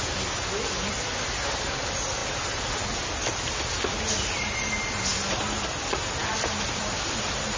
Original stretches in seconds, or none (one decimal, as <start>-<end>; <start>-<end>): 0.0-7.6